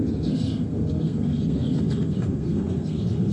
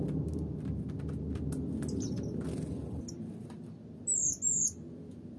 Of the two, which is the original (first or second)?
second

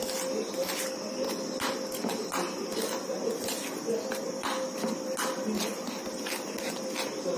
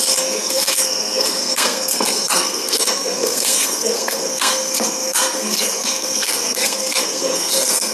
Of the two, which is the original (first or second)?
first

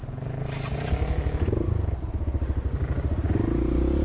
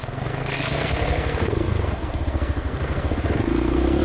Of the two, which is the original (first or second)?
first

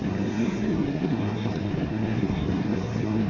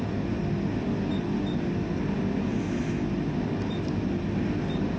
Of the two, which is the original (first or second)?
second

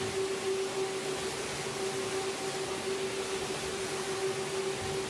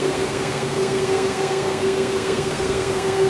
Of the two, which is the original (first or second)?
first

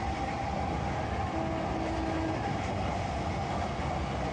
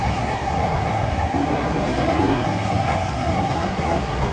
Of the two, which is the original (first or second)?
first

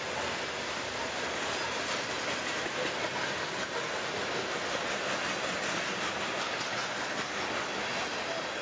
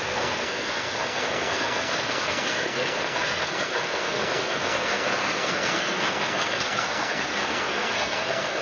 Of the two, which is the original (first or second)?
first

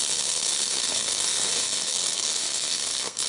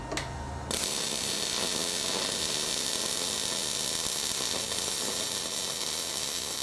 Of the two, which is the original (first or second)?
second